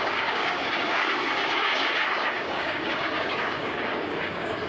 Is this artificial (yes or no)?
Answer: yes